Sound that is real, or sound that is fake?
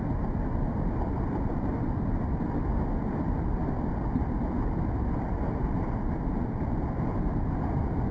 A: real